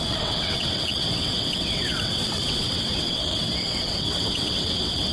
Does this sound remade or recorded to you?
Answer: remade